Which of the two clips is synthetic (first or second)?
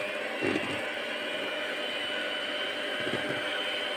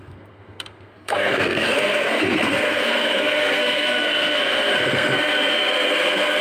second